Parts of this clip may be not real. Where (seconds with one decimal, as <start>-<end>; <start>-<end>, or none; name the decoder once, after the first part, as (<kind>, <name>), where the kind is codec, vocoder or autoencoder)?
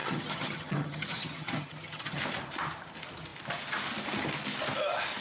0.0-2.2 (vocoder, HiFi-GAN)